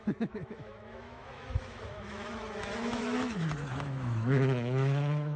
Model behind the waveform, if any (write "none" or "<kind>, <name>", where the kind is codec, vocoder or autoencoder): autoencoder, DAC-VAE